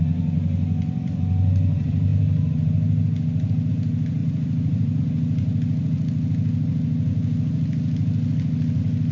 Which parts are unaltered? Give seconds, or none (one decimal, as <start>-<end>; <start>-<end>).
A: 0.0-4.2; 5.0-9.1